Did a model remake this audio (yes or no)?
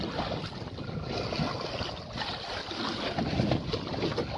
no